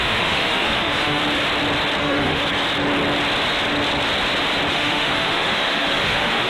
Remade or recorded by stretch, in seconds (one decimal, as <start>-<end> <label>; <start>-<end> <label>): 0.0-1.2 remade; 1.2-2.0 recorded; 2.0-2.4 remade; 2.4-4.7 recorded; 4.7-6.5 remade